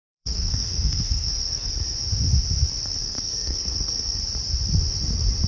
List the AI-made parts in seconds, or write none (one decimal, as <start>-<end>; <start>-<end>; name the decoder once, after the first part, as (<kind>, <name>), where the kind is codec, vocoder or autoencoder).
0.0-1.7 (codec, SNAC); 3.0-4.2